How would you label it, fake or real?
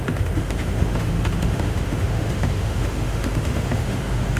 fake